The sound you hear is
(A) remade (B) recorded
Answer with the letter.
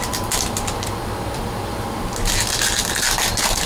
B